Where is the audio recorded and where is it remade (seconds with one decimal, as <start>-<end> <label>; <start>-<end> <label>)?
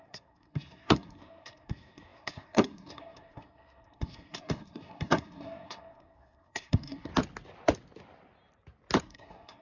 0.0-7.1 remade; 7.1-9.0 recorded; 9.0-9.6 remade